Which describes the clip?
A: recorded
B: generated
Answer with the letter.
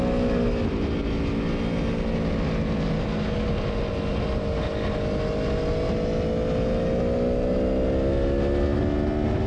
A